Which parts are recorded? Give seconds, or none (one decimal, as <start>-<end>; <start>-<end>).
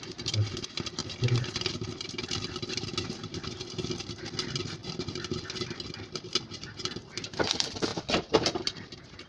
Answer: 1.0-1.5; 4.8-7.5